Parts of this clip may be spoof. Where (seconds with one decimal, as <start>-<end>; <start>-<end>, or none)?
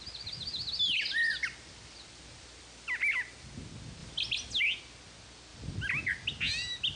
none